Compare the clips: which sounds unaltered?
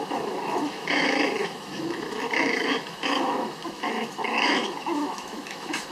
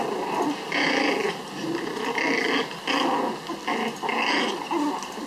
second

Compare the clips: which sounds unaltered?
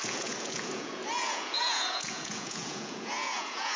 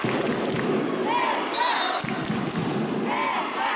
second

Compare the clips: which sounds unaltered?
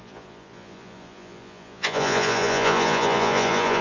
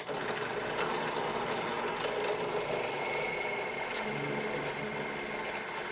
second